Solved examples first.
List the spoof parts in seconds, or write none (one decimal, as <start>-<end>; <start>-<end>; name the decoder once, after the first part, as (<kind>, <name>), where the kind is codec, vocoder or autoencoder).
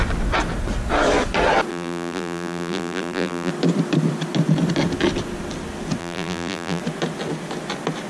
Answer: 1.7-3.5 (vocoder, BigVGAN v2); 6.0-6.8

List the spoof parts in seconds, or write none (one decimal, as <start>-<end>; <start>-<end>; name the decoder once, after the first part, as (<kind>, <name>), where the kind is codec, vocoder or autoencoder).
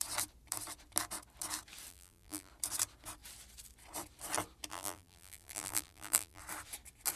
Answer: 1.9-2.5 (vocoder, BigVGAN v2); 4.7-6.4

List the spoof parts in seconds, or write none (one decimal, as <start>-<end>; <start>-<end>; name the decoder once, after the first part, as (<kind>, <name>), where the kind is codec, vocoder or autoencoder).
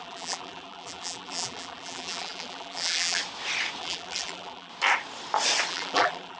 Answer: 0.0-3.2 (vocoder, BigVGAN v2); 3.8-4.7; 5.7-6.4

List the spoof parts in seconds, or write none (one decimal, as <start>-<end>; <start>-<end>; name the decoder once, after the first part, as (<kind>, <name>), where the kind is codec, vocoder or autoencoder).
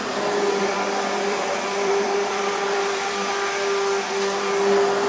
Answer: 0.7-3.3 (vocoder, BigVGAN v2)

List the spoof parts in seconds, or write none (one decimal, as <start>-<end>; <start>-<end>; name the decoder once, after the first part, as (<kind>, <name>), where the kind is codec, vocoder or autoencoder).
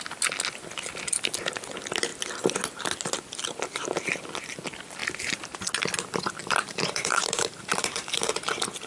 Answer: 5.0-5.6 (vocoder, BigVGAN v2); 6.4-8.3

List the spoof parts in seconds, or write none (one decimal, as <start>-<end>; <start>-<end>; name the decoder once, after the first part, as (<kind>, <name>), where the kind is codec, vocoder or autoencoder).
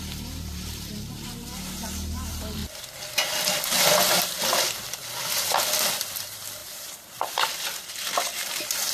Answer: 0.0-2.6 (vocoder, BigVGAN v2); 6.0-8.9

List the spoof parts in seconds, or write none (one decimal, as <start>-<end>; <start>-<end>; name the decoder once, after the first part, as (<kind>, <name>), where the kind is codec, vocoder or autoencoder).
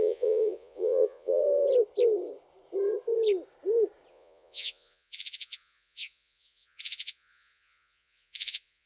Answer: 0.0-1.4 (vocoder, Vocos); 4.1-8.9